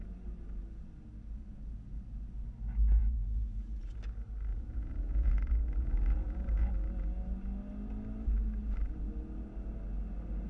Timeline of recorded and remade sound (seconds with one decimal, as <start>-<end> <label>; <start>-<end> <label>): 0.0-3.0 recorded; 3.0-3.9 remade; 3.9-4.5 recorded; 4.5-6.7 remade; 6.7-10.5 recorded